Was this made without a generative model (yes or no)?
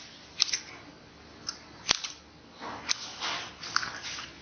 yes